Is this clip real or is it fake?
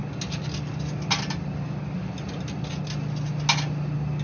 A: real